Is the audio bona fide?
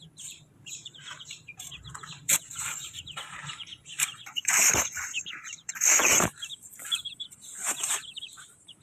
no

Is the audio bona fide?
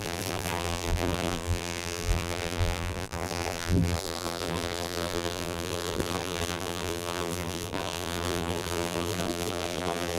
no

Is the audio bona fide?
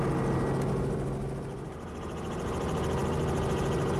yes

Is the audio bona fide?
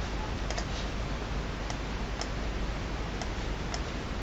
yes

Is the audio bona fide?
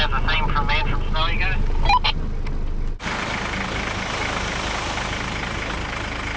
yes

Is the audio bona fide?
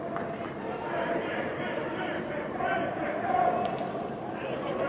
no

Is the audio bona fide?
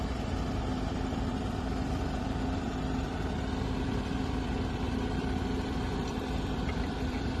no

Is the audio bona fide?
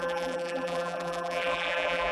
no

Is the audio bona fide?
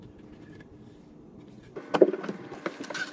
yes